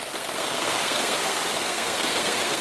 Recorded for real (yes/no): no